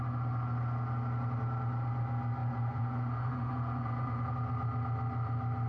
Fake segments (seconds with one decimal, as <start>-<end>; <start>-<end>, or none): 2.4-4.3